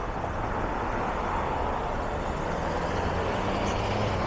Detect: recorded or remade recorded